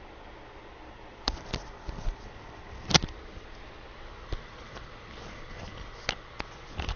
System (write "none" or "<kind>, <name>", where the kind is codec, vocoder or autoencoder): none